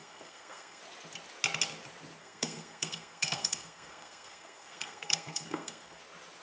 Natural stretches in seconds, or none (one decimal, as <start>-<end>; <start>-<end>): 0.8-2.2; 6.0-6.4